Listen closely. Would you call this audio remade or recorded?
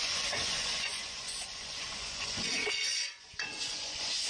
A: remade